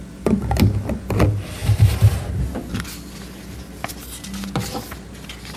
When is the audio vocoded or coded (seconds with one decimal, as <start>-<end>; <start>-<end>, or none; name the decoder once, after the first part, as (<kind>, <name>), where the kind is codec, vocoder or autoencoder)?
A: 1.6-2.3 (vocoder, BigVGAN v2)